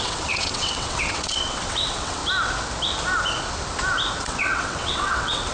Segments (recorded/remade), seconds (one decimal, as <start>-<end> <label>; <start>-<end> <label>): 0.0-2.2 remade; 2.2-4.2 recorded; 4.2-5.5 remade